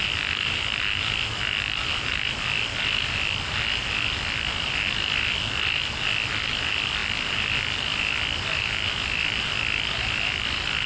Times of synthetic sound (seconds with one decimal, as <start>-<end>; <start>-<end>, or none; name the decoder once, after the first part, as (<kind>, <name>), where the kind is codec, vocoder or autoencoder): none